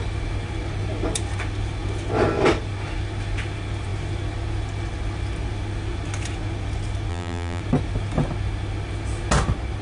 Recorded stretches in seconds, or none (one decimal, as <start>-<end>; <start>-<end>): 0.0-7.1; 7.6-9.8